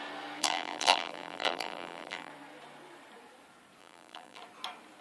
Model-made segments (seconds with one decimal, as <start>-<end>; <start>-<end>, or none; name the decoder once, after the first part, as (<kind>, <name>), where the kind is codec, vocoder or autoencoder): 0.4-2.3 (vocoder, BigVGAN v2); 3.8-4.4